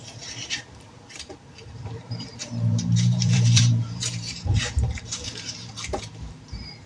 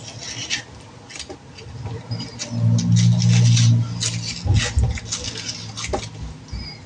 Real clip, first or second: second